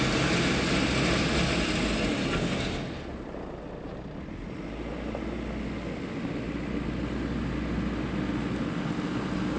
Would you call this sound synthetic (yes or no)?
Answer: no